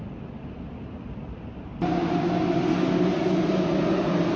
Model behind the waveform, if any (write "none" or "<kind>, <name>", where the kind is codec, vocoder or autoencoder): none